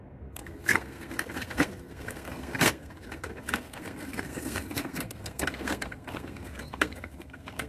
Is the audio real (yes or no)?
no